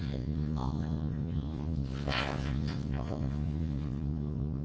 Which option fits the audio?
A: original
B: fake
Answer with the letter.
B